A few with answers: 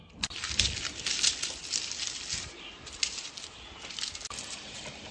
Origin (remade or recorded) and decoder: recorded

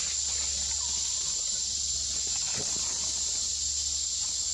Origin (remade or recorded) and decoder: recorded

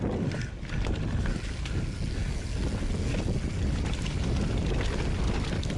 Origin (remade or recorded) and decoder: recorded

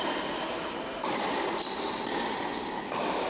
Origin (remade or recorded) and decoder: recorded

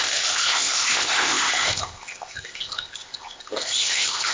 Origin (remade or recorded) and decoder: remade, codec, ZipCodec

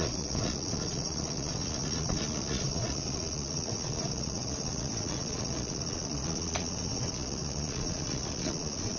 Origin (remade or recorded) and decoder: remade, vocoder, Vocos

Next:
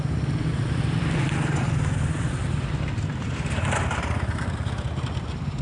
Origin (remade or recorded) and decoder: remade, vocoder, BigVGAN v2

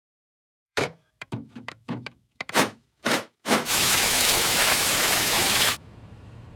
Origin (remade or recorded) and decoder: remade, autoencoder, DAC-VAE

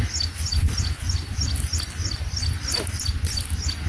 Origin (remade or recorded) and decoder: recorded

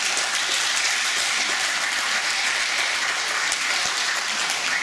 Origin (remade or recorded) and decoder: remade, vocoder, BigVGAN v2